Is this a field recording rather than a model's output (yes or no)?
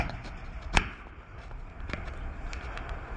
yes